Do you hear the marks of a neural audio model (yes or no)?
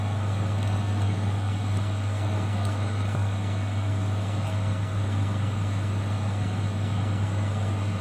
yes